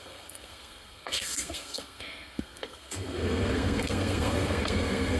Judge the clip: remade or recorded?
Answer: remade